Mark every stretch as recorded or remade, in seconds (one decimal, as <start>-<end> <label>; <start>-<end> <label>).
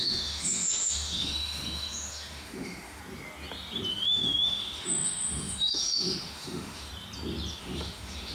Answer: 0.0-3.0 remade; 3.0-3.9 recorded; 3.9-6.9 remade; 6.9-7.6 recorded; 7.6-8.3 remade